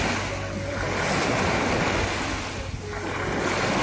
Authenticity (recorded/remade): recorded